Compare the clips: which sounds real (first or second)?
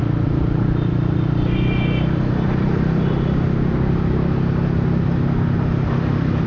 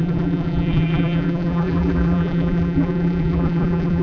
first